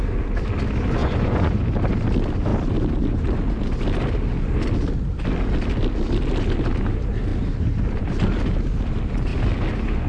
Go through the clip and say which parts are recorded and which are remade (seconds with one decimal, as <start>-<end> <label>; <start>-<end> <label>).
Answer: 0.0-1.0 recorded; 1.0-1.5 remade; 1.5-10.1 recorded